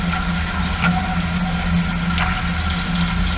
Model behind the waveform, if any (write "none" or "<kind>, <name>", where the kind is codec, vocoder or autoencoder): none